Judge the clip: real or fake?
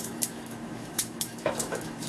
fake